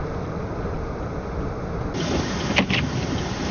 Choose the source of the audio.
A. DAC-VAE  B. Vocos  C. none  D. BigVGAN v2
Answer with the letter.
C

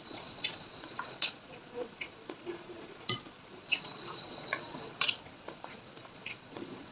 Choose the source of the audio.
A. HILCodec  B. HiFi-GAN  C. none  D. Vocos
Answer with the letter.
D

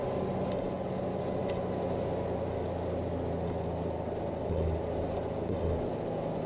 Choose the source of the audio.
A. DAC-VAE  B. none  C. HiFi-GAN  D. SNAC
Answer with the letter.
B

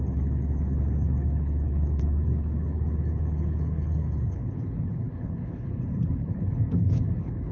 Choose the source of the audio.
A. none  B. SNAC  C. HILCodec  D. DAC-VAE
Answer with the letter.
C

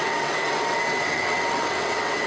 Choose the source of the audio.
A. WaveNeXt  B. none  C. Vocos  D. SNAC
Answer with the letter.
A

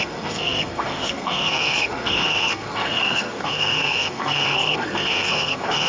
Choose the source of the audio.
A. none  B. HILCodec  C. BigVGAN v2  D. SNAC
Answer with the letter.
D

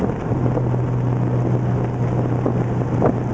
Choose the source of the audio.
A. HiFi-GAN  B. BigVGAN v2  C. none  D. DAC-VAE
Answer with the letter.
C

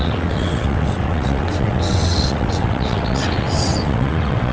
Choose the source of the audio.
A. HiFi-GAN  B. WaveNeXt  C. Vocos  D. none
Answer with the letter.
B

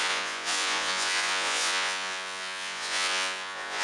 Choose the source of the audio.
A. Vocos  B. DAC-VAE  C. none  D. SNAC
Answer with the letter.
A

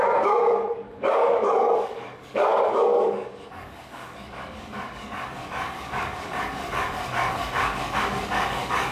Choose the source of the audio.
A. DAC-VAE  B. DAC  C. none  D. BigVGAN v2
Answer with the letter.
B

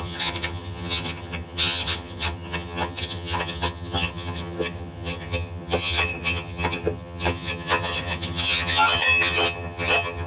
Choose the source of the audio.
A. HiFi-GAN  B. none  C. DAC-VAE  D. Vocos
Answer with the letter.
A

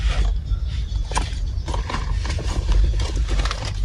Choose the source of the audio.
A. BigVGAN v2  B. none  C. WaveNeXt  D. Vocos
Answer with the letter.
A